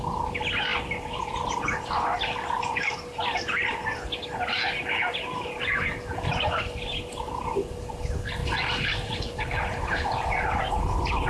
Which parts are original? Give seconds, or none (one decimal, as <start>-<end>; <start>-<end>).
0.0-8.4; 10.7-11.3